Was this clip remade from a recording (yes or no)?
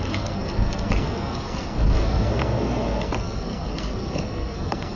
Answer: yes